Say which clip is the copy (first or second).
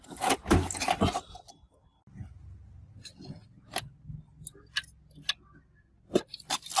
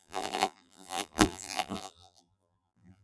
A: second